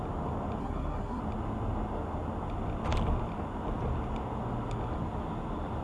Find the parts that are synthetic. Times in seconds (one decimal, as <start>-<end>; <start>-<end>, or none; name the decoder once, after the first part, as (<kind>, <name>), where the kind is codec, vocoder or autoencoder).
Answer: 0.6-1.2 (codec, SNAC)